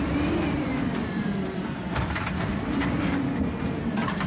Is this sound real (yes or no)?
no